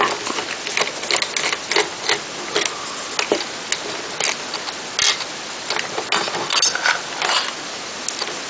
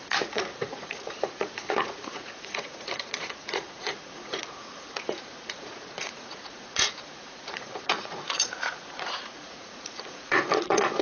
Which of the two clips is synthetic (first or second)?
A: second